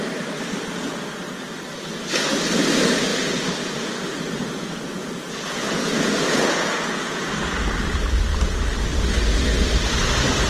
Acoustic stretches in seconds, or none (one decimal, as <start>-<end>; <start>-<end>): 0.0-3.1; 7.3-10.5